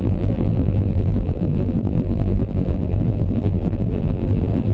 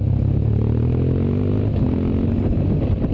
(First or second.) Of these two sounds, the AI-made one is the first